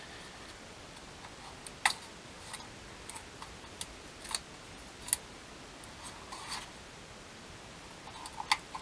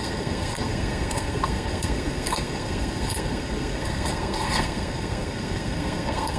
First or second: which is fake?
second